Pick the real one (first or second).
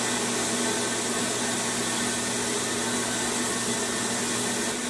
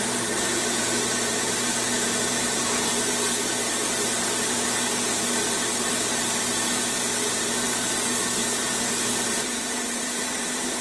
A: first